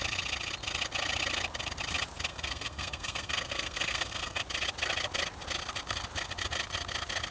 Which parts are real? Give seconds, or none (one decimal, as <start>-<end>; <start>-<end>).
0.0-2.3; 4.4-7.3